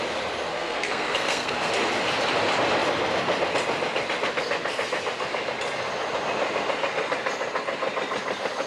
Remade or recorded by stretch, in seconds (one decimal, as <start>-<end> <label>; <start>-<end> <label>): 0.0-0.5 recorded; 0.5-1.7 remade; 1.7-8.7 recorded